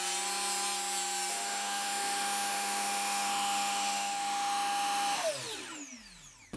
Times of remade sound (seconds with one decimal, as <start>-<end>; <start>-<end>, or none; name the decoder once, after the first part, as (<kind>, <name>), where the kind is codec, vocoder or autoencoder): 1.3-5.3 (autoencoder, DAC-VAE)